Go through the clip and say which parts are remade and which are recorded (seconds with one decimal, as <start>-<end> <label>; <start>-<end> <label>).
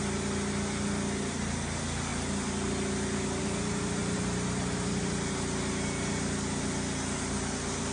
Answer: 0.0-7.9 recorded